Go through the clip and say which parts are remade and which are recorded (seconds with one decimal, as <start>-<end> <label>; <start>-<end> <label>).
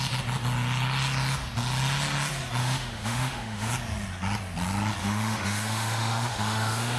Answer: 0.0-2.6 recorded; 2.6-3.7 remade; 3.7-5.0 recorded; 5.0-7.0 remade